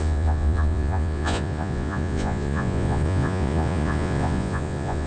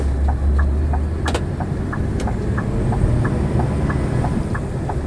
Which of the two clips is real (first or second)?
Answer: second